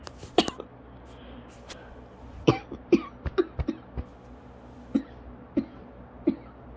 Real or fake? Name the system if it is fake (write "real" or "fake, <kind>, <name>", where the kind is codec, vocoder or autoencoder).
real